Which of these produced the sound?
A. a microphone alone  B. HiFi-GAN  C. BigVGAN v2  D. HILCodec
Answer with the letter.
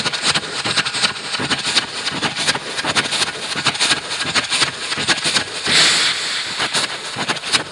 A